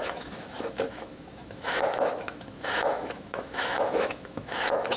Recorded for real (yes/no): no